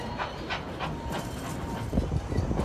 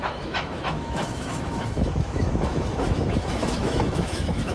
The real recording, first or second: first